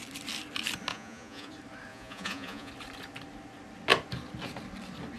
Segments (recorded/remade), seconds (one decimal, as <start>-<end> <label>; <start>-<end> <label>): 0.0-0.9 recorded; 0.9-1.5 remade; 1.5-1.9 recorded; 1.9-2.7 remade; 2.7-5.2 recorded